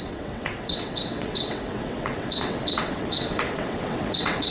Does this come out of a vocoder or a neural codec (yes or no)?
yes